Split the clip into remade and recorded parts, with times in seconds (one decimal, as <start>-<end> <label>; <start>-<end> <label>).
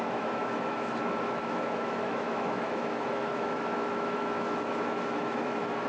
0.0-5.9 remade